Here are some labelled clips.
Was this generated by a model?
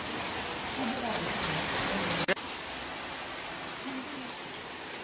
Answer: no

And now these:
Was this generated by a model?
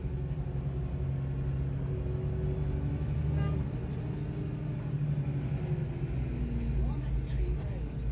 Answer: no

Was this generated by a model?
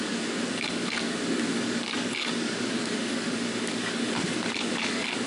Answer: yes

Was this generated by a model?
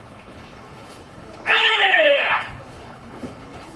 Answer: yes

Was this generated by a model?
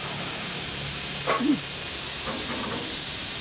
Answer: no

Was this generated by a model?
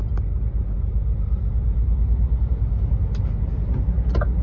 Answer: no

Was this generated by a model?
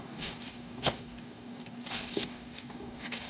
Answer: yes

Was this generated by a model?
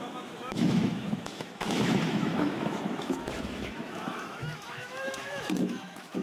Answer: yes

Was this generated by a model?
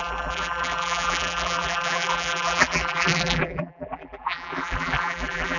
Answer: yes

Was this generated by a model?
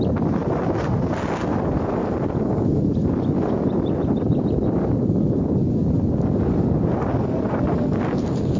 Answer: no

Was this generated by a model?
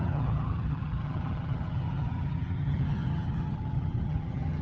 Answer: yes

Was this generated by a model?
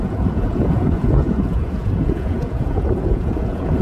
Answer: yes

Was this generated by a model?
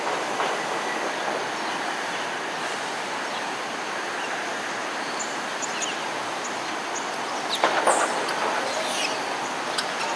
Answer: no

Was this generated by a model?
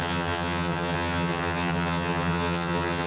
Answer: yes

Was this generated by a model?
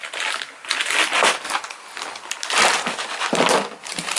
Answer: no